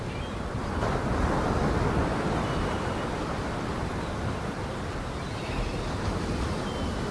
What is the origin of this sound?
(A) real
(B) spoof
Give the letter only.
A